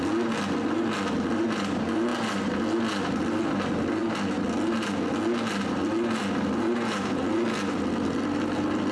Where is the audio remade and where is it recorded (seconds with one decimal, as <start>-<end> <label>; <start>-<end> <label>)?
0.0-8.9 recorded